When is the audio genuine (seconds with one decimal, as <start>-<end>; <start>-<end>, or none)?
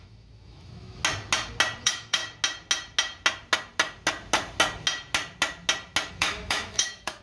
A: 1.0-1.8; 2.2-6.1